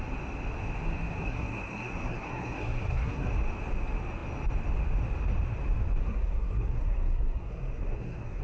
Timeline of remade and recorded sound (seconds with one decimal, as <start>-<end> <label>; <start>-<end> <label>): 0.0-1.2 recorded; 1.2-3.3 remade; 3.3-6.0 recorded; 6.0-8.4 remade